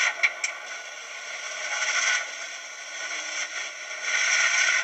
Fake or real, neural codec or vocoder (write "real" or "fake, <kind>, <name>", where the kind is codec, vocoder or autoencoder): real